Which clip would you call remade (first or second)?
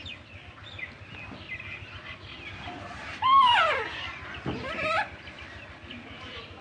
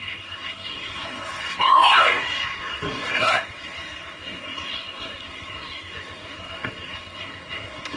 second